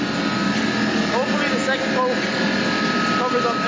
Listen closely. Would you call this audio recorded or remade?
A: recorded